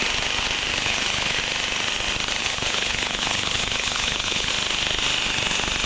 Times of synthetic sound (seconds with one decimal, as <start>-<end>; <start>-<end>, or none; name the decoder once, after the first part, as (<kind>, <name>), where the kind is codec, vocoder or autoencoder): 0.7-1.4 (codec, HILCodec); 2.4-4.5